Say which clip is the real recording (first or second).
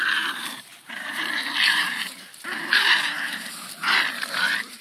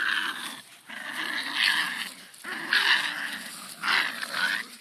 second